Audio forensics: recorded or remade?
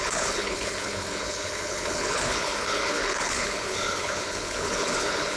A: remade